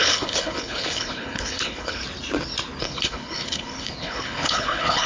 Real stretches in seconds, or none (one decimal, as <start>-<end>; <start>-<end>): 2.0-2.8